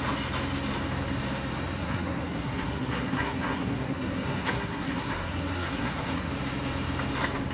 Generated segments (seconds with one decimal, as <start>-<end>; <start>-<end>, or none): 1.8-6.3